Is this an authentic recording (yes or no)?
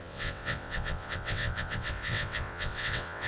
no